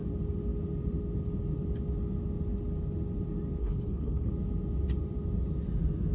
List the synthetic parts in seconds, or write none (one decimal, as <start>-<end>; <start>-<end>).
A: 3.6-4.3